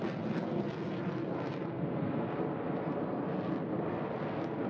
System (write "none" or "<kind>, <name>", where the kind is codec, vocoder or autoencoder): none